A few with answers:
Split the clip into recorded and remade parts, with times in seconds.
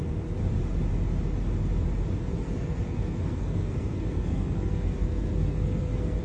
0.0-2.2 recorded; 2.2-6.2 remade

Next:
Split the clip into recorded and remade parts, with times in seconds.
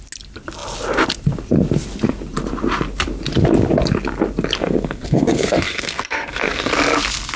0.0-4.6 recorded; 4.6-6.7 remade; 6.7-7.4 recorded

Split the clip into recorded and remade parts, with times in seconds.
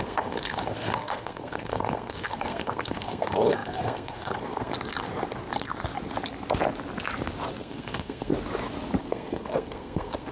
0.0-4.7 remade; 4.7-7.6 recorded; 7.6-8.3 remade; 8.3-9.0 recorded; 9.0-10.3 remade